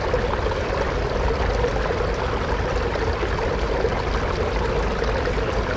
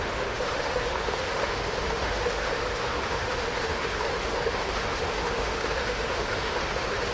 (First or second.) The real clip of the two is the first